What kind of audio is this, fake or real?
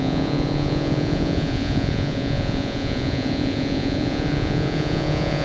fake